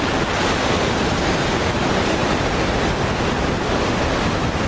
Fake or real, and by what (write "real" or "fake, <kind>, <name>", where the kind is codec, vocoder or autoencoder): real